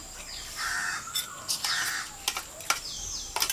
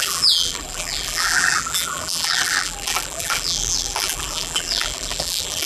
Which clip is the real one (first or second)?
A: first